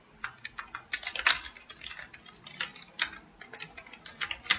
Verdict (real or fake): real